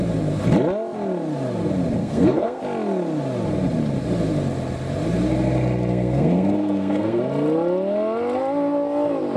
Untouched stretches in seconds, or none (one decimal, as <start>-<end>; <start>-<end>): 0.0-2.0; 2.6-5.9; 7.2-9.4